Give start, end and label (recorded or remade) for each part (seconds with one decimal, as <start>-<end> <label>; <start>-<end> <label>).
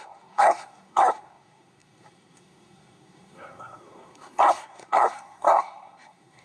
0.0-6.4 remade